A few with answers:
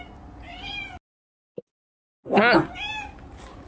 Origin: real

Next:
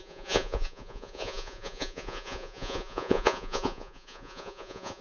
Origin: fake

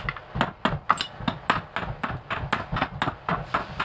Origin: real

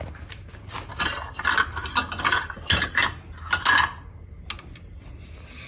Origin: real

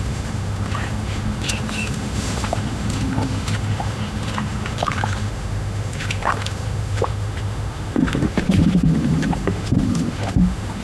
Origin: fake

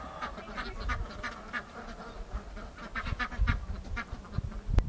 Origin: real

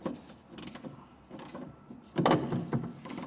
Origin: fake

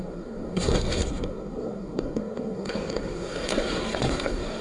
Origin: fake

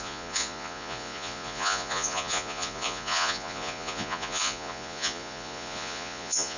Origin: fake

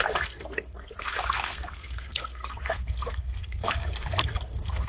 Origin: fake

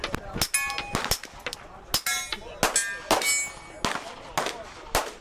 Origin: real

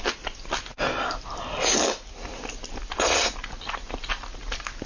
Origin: real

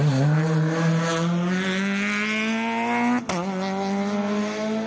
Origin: real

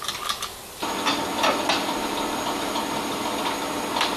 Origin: real